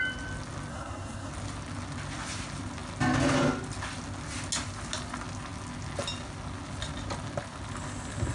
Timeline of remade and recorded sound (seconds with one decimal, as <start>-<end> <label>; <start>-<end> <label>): 0.0-0.7 recorded; 0.7-1.3 remade; 1.3-8.3 recorded

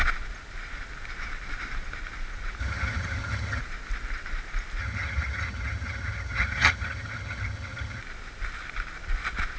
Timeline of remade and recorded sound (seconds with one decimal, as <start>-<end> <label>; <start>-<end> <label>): 0.0-2.6 recorded; 2.6-3.6 remade; 3.6-4.8 recorded; 4.8-8.0 remade; 8.0-9.6 recorded

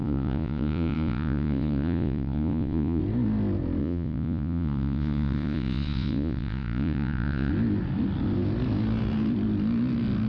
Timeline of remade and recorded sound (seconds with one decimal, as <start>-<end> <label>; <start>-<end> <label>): 0.0-3.0 remade; 3.0-3.8 recorded; 3.8-7.5 remade; 7.5-10.3 recorded

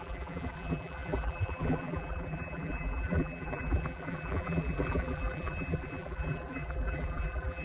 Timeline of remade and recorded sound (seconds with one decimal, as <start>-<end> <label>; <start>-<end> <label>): 0.0-7.6 remade

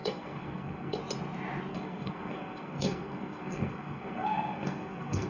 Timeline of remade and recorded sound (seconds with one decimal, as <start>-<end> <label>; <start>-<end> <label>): 0.0-1.0 remade; 1.0-1.7 recorded; 1.7-5.3 remade